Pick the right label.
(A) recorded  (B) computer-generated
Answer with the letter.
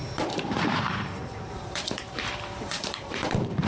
B